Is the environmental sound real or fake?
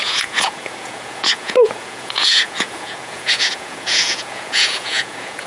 fake